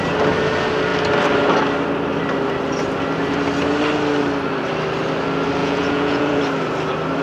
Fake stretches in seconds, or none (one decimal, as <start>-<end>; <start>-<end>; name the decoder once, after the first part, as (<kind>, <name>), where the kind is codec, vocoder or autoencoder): 5.6-6.4 (vocoder, Vocos)